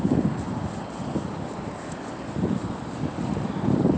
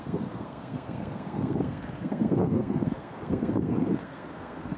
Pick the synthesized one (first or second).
second